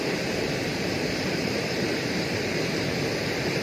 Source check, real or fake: fake